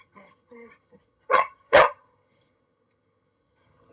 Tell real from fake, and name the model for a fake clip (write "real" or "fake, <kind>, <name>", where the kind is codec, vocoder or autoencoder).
fake, vocoder, HiFi-GAN